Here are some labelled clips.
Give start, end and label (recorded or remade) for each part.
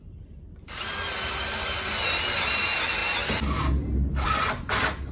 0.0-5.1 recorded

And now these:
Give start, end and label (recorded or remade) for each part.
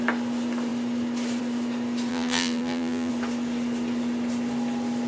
0.0-2.1 recorded; 2.1-3.1 remade; 3.1-5.1 recorded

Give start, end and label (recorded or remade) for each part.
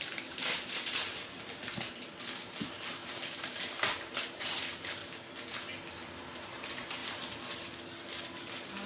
0.0-5.0 remade; 5.0-6.2 recorded; 6.2-7.0 remade; 7.0-8.9 recorded